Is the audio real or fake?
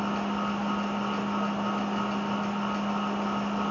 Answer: real